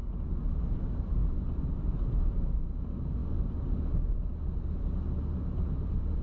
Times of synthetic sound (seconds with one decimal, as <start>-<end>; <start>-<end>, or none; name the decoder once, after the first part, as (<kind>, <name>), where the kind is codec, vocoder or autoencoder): 0.6-1.2 (vocoder, BigVGAN v2); 1.8-3.2; 5.2-6.2